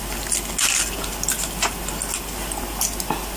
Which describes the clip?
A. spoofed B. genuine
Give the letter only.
B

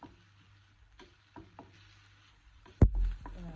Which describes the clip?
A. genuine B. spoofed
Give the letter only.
A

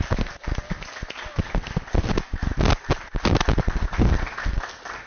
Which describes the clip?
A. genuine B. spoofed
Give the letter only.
A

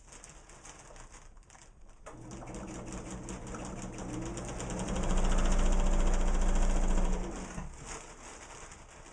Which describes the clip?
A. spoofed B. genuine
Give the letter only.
B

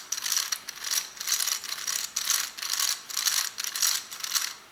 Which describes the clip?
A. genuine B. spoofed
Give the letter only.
A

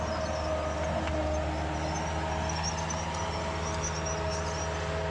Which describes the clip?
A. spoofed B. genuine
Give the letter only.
B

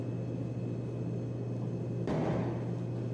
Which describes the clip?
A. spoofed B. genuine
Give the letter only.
B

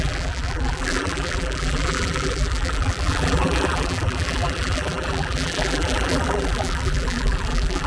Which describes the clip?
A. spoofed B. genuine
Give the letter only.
A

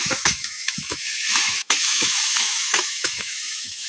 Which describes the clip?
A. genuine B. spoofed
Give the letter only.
B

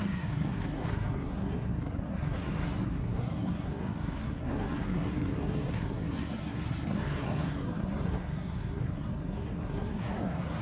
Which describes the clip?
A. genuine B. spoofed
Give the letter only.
B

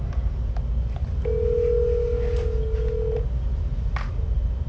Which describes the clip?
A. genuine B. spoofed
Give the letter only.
A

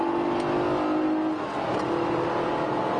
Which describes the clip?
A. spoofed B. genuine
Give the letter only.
B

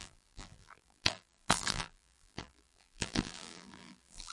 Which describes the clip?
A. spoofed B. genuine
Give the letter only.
A